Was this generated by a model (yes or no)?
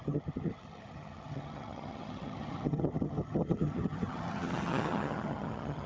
yes